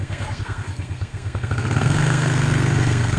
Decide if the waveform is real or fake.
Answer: fake